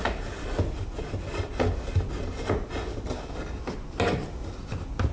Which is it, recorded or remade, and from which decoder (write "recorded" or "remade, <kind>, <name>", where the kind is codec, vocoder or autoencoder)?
recorded